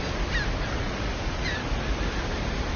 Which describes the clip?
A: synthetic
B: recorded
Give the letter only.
B